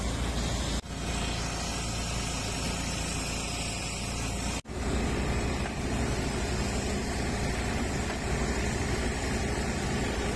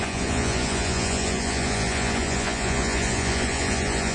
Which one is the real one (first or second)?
first